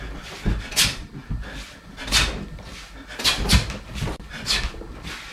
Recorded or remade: recorded